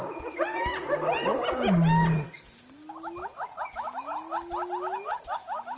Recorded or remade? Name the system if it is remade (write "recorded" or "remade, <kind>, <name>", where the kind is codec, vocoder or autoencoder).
recorded